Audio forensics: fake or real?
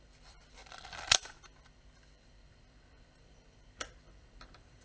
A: fake